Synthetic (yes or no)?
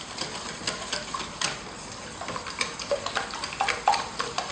no